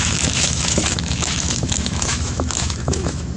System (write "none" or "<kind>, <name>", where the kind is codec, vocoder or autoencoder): autoencoder, DAC-VAE